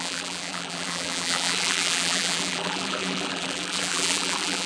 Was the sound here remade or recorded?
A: remade